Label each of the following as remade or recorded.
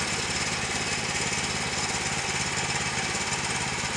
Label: recorded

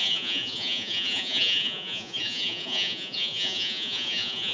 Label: remade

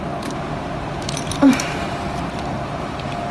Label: remade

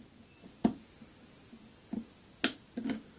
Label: recorded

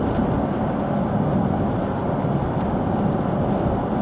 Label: recorded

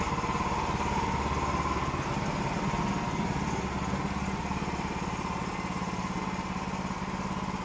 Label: recorded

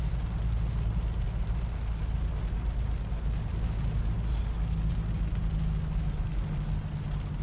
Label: recorded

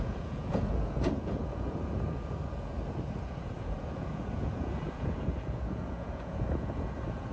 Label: remade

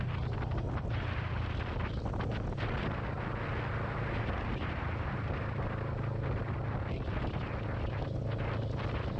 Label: recorded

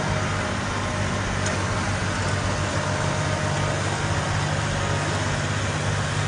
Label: recorded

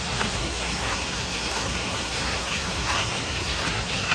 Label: remade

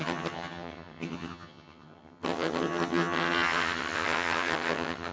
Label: remade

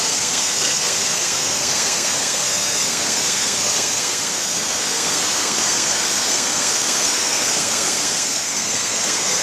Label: remade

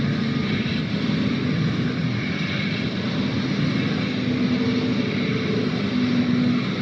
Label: recorded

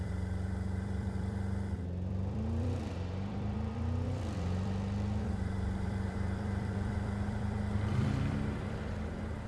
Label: remade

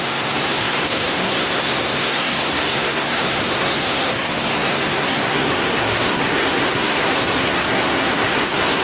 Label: remade